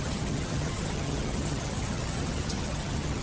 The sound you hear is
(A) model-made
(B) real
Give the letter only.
A